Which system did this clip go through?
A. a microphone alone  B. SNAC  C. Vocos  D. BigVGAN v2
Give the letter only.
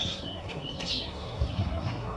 B